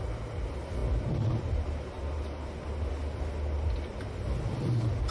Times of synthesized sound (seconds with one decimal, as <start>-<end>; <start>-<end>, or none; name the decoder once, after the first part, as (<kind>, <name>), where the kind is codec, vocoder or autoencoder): none

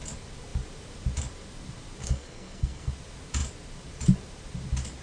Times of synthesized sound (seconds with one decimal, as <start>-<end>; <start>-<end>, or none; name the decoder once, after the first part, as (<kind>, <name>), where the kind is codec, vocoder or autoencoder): 2.0-2.9 (codec, SNAC)